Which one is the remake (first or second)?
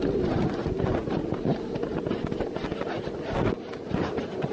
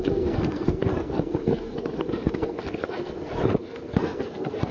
second